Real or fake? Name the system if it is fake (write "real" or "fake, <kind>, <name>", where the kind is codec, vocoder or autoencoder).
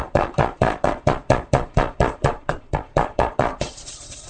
fake, vocoder, Vocos